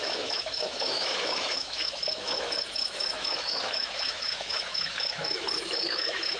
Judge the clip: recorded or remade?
remade